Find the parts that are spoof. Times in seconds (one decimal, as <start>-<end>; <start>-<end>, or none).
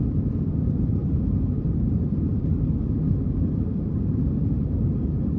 0.0-1.0; 1.6-5.4